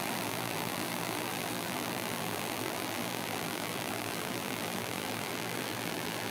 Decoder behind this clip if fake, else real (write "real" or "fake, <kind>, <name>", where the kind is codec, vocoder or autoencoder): fake, vocoder, BigVGAN v2